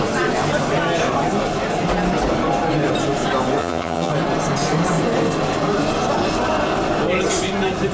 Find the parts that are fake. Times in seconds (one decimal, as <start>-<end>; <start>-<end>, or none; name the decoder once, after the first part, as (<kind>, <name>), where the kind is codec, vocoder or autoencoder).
3.6-4.1 (vocoder, HiFi-GAN)